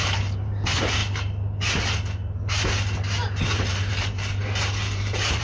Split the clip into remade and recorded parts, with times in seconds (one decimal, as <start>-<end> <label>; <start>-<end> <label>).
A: 0.0-1.0 remade; 1.0-3.7 recorded; 3.7-5.4 remade